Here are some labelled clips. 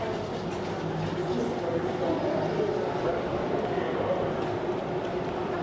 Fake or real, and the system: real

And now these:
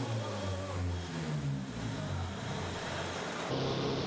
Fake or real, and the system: real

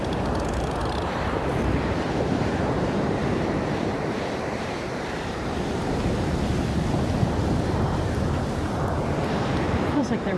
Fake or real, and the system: fake, vocoder, BigVGAN v2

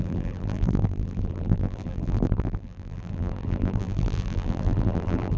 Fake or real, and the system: fake, vocoder, BigVGAN v2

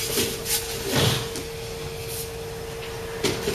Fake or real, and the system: real